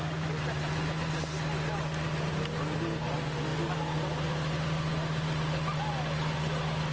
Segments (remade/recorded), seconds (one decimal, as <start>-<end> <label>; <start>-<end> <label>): 0.0-6.9 recorded